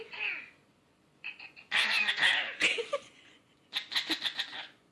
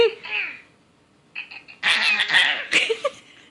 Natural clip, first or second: second